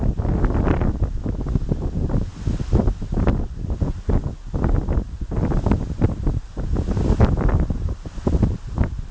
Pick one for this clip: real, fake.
real